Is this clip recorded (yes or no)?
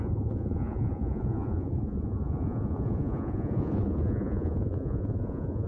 no